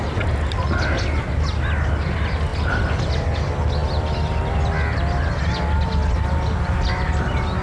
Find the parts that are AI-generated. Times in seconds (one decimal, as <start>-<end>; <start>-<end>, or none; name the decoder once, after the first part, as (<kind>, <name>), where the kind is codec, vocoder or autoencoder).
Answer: none